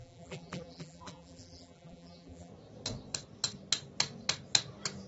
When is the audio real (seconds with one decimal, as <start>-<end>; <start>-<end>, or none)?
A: 2.5-5.1